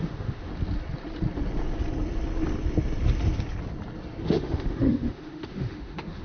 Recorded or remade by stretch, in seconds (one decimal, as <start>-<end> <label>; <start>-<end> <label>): 0.0-0.5 remade; 0.5-4.2 recorded; 4.2-6.2 remade

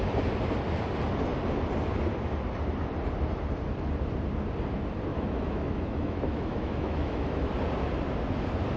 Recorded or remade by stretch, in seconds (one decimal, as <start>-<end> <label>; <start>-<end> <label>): 0.0-5.1 recorded; 5.1-7.5 remade; 7.5-8.8 recorded

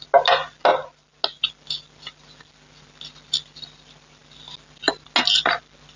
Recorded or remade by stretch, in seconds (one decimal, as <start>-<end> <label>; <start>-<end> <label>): 0.0-6.0 recorded

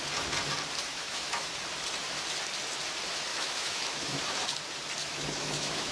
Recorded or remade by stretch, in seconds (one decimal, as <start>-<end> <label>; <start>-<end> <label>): 0.0-0.9 recorded; 0.9-1.5 remade; 1.5-3.3 recorded; 3.3-4.2 remade; 4.2-5.0 recorded; 5.0-5.9 remade